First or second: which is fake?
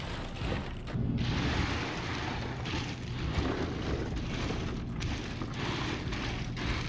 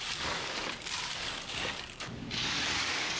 second